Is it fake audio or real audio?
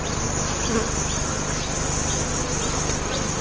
real